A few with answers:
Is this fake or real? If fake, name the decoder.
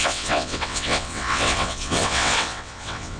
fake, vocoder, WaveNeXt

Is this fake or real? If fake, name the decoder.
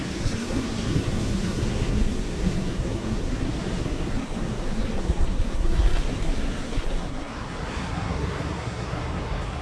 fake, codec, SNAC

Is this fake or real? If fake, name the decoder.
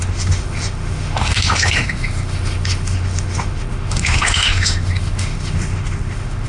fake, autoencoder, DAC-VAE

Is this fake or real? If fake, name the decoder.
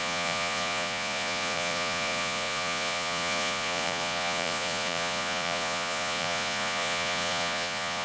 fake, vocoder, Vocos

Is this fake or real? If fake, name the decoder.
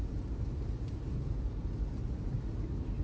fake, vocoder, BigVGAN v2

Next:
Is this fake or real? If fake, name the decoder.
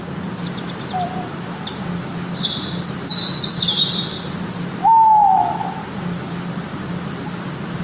real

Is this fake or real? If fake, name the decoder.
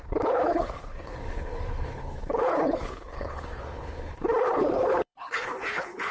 fake, codec, HILCodec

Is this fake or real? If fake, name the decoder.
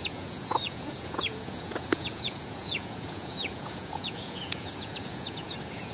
fake, vocoder, Vocos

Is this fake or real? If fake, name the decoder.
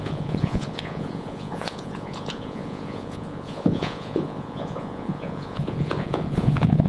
fake, vocoder, Vocos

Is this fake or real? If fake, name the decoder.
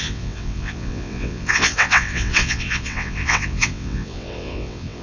fake, vocoder, WaveNeXt